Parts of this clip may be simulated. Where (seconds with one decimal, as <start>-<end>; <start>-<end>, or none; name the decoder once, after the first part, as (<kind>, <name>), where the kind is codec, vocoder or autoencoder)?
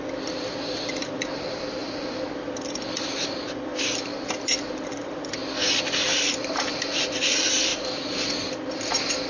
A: 0.0-4.1 (vocoder, BigVGAN v2); 4.7-7.7